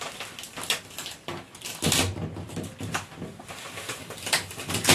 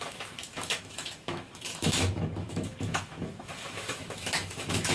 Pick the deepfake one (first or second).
second